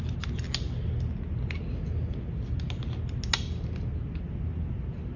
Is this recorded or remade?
recorded